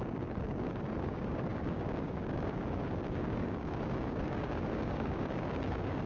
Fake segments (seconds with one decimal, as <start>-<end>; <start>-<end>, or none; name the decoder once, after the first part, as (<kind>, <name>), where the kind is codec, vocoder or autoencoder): 0.0-6.1 (codec, DAC)